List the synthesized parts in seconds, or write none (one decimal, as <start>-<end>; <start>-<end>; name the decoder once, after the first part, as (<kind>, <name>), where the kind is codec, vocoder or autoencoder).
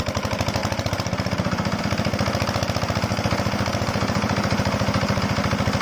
0.6-1.8 (vocoder, BigVGAN v2); 3.1-5.2